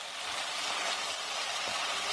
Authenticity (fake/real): real